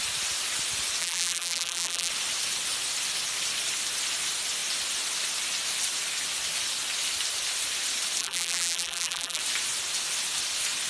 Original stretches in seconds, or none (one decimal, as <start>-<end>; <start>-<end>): 0.0-1.0; 2.1-8.2; 9.4-10.9

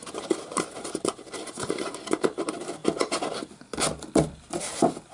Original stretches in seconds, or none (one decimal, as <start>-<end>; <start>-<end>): 2.8-5.1

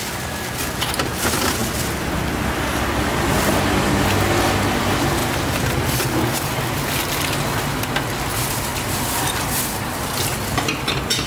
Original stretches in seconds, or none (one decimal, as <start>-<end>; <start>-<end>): 0.0-8.7; 9.8-11.3

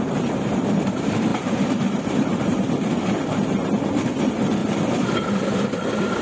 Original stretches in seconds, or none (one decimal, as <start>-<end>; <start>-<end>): 0.0-1.3; 2.4-4.6; 5.4-6.2

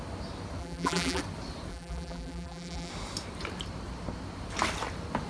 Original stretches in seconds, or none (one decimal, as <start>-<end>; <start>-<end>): 0.0-0.6; 1.2-1.7; 2.9-5.3

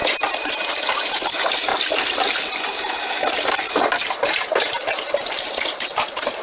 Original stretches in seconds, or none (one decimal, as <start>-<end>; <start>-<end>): 1.7-5.1

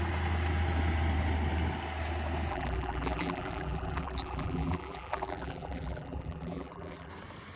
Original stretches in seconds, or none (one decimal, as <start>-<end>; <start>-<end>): 0.0-2.5; 7.1-7.6

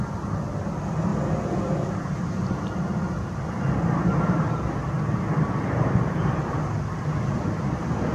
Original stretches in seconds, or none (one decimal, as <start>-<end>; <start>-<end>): 1.1-6.0